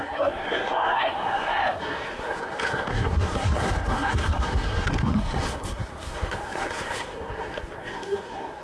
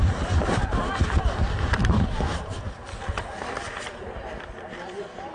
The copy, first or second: first